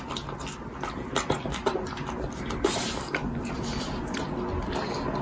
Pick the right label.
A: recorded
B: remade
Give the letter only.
A